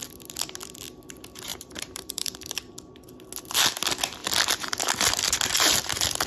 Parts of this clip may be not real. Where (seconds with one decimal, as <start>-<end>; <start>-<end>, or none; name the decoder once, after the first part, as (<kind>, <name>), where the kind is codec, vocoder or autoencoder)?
1.5-2.7 (vocoder, BigVGAN v2)